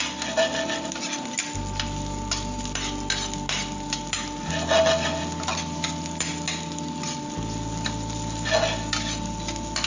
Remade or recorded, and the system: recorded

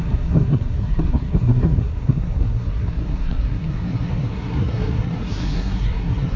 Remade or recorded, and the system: remade, codec, SNAC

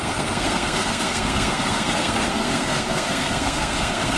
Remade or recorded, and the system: remade, codec, SNAC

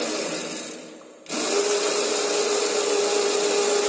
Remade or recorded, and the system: recorded